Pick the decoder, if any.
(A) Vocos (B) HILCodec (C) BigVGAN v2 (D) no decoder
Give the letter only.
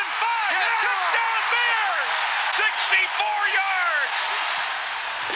D